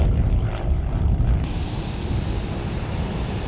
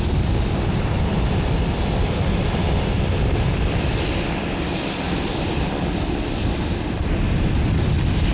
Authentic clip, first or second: first